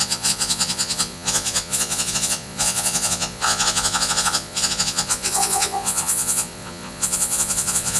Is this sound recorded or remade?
remade